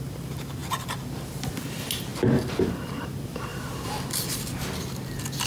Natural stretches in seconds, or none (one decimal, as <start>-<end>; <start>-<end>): 0.0-0.6; 1.5-3.5

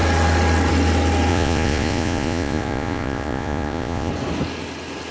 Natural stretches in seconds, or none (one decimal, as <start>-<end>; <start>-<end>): 0.0-1.3; 4.1-5.1

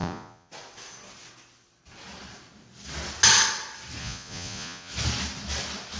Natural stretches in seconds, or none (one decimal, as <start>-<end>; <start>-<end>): 0.5-4.0; 4.9-6.0

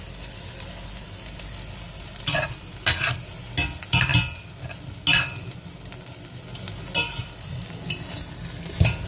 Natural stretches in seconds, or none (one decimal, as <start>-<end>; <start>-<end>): 0.0-9.1

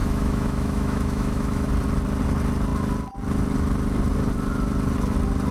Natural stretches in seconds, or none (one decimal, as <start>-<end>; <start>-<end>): 1.7-5.5

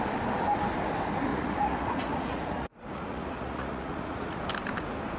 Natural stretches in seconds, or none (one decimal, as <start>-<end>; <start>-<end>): 0.0-1.3; 4.4-5.2

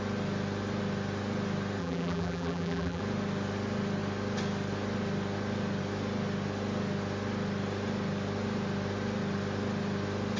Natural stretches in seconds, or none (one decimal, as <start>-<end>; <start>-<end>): 0.0-1.8; 3.0-10.4

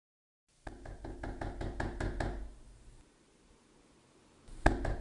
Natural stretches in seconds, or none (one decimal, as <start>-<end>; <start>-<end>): 0.0-5.0